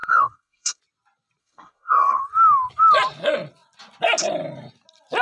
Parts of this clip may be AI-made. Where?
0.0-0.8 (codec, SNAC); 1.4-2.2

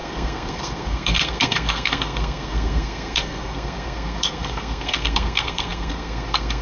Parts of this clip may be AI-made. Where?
0.0-6.6 (codec, SNAC)

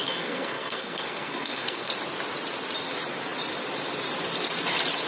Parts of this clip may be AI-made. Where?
0.0-1.9 (codec, SNAC)